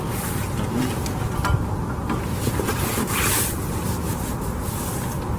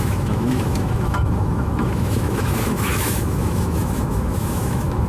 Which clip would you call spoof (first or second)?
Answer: second